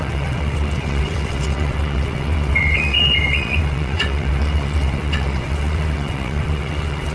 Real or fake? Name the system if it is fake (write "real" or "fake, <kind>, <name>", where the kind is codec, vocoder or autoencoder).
fake, vocoder, WaveNeXt